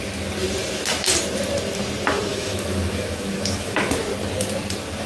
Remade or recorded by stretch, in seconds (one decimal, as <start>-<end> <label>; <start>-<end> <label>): 0.0-2.3 recorded; 2.3-3.9 remade; 3.9-5.1 recorded